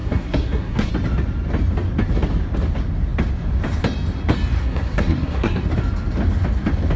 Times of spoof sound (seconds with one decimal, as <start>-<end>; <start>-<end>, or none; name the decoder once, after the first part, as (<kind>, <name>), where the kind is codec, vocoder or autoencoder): 0.0-0.9 (codec, SNAC); 4.6-5.6